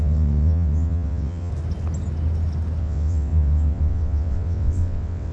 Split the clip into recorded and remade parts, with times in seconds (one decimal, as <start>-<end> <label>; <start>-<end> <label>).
0.0-1.5 remade; 1.5-2.8 recorded; 2.8-5.3 remade